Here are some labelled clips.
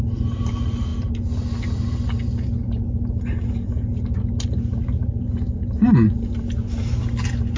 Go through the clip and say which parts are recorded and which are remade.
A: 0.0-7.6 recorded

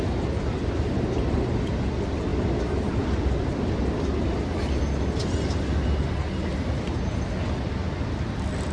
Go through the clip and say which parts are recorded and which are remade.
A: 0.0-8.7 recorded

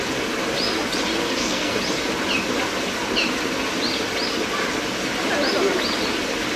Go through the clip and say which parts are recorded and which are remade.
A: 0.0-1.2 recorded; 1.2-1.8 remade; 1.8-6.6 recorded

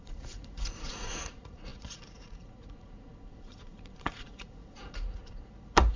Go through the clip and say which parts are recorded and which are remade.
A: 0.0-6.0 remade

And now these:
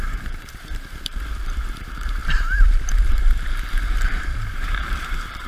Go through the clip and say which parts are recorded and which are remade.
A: 0.0-5.5 remade

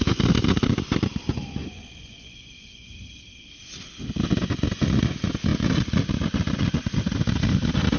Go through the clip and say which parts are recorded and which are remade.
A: 0.0-1.6 recorded; 1.6-2.9 remade; 2.9-8.0 recorded

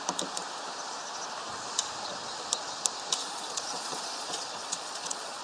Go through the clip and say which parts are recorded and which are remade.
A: 0.0-3.2 recorded; 3.2-5.4 remade

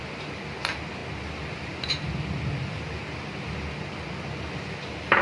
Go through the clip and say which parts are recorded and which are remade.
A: 0.0-5.2 recorded